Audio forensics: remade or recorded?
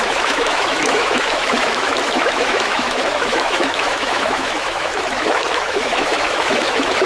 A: remade